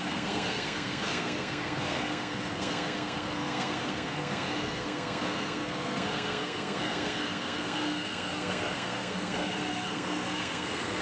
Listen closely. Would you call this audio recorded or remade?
remade